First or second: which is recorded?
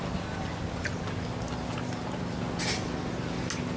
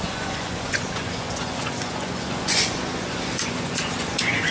first